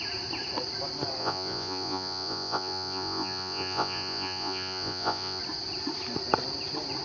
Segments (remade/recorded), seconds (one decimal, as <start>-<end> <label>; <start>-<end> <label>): 0.0-1.2 recorded; 1.2-5.4 remade; 5.4-7.0 recorded